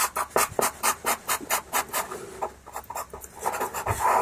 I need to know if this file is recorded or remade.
recorded